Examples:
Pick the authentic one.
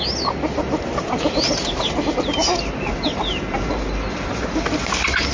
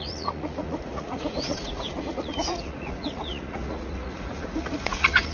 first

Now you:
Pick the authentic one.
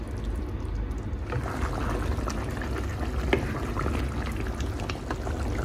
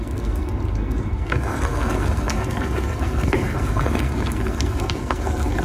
first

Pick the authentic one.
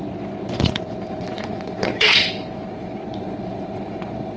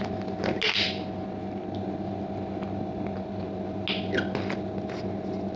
second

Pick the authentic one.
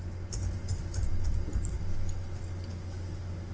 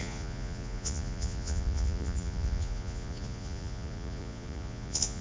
first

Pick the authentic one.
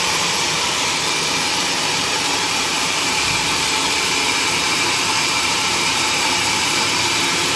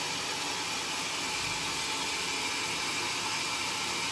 second